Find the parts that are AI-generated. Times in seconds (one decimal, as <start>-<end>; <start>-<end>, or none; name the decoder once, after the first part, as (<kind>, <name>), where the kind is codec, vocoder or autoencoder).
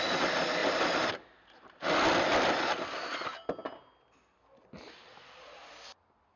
none